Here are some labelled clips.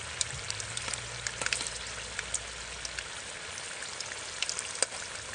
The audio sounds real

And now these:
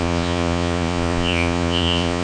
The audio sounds fake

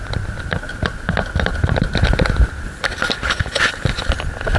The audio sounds real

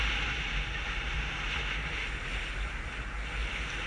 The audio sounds real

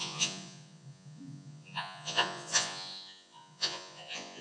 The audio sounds fake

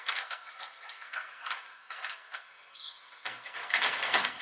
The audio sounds fake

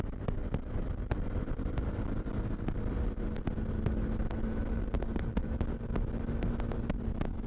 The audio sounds real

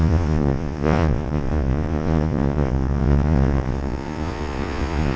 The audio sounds fake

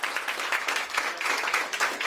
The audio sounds fake